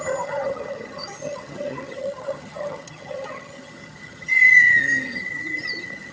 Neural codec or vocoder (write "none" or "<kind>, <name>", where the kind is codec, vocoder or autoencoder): vocoder, HiFi-GAN